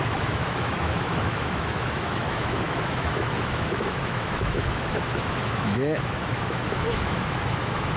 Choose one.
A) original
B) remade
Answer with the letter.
B